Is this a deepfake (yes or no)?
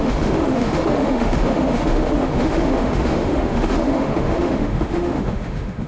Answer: yes